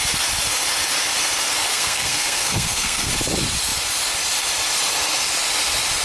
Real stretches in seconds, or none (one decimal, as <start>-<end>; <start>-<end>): 0.0-1.7; 3.1-6.0